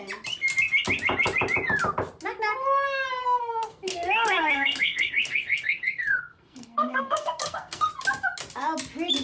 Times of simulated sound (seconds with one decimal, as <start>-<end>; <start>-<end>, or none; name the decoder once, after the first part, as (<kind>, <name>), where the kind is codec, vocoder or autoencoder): 3.2-7.9 (codec, SNAC)